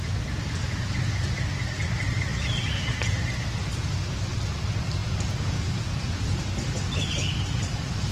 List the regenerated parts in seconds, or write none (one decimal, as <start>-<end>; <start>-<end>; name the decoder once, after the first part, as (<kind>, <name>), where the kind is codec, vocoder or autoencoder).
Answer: 5.0-6.2 (vocoder, Vocos)